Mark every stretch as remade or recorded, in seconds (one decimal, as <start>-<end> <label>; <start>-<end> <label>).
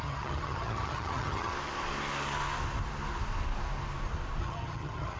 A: 0.0-1.5 remade; 1.5-4.4 recorded; 4.4-5.2 remade